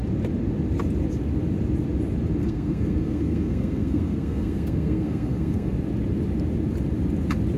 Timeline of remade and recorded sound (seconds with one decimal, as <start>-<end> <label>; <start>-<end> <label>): 0.0-2.4 recorded; 2.4-5.7 remade; 5.7-7.6 recorded

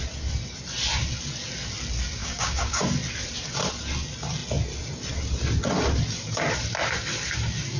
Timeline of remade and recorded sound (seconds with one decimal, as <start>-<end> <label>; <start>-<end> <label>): 0.0-2.2 recorded; 2.2-2.8 remade; 2.8-7.8 recorded

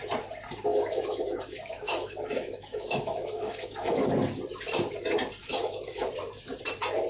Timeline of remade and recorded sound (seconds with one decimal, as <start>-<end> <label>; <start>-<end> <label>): 0.0-0.7 recorded; 0.7-4.0 remade; 4.0-5.4 recorded; 5.4-6.1 remade; 6.1-7.1 recorded